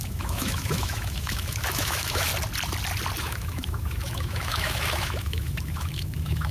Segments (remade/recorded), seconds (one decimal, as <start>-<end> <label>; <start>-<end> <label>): 0.0-2.3 remade; 2.3-3.2 recorded; 3.2-6.5 remade